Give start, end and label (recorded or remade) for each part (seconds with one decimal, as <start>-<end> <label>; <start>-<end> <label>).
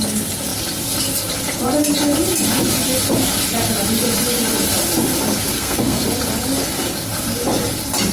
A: 0.0-5.5 recorded; 5.5-6.0 remade; 6.0-8.1 recorded